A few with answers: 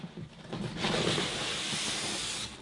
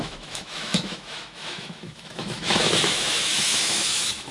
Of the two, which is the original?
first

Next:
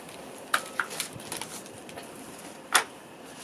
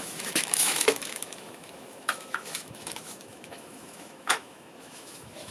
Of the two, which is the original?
first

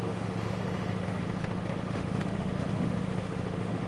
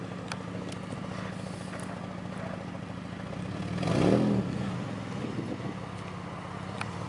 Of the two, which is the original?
second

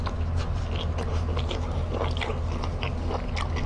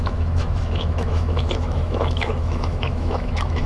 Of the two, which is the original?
first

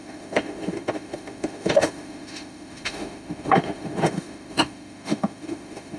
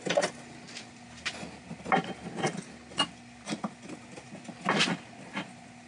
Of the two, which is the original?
second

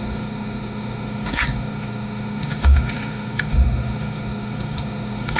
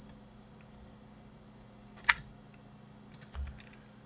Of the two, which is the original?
second